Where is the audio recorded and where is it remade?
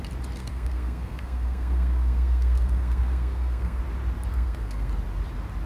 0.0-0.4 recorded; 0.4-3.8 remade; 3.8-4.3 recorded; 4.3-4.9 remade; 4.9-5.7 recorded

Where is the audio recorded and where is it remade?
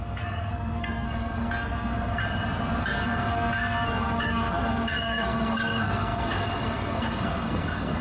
0.0-2.2 remade; 2.2-2.8 recorded; 2.8-8.0 remade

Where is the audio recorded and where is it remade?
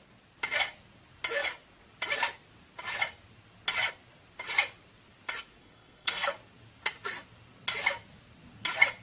0.0-5.6 recorded; 5.6-6.3 remade; 6.3-9.0 recorded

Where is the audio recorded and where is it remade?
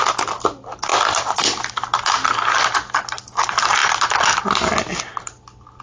0.0-5.8 recorded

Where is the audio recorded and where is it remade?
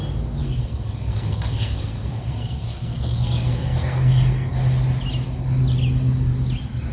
0.0-0.4 recorded; 0.4-4.5 remade; 4.5-6.9 recorded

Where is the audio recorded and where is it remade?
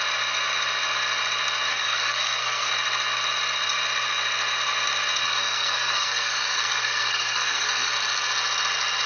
0.0-1.7 recorded; 1.7-2.7 remade; 2.7-5.4 recorded; 5.4-7.9 remade; 7.9-9.1 recorded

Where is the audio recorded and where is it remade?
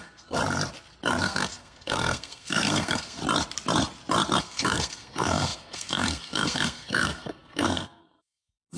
0.0-0.4 remade; 0.4-1.2 recorded; 1.2-3.2 remade; 3.2-4.4 recorded; 4.4-8.8 remade